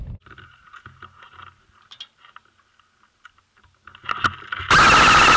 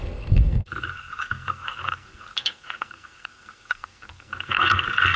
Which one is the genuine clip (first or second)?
first